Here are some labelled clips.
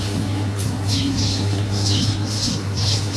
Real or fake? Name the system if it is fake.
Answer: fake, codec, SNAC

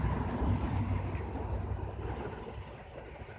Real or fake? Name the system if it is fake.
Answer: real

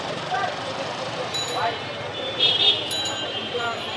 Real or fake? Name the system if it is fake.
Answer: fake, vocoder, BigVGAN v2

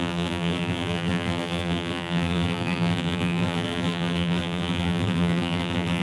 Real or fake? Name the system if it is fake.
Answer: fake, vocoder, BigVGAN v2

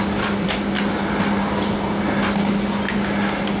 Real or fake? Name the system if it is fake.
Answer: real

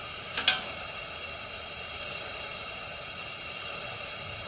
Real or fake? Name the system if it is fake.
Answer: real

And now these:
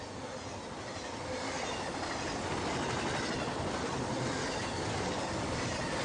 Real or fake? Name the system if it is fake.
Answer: fake, vocoder, BigVGAN v2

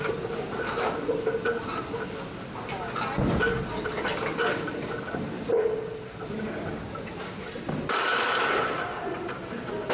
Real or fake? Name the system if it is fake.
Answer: real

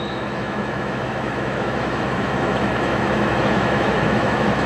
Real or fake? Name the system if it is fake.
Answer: fake, autoencoder, DAC-VAE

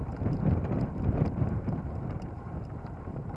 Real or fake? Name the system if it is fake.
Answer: fake, vocoder, BigVGAN v2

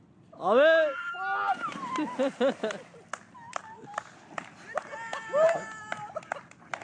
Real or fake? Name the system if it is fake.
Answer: real